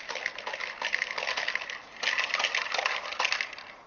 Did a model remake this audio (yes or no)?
no